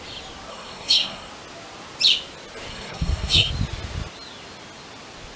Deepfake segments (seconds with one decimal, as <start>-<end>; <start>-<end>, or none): 0.5-1.3; 2.7-3.5